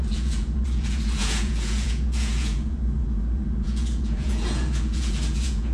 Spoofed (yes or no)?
yes